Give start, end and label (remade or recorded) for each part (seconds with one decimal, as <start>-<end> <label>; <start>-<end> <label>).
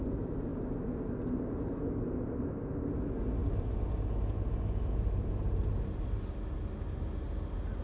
0.0-7.8 recorded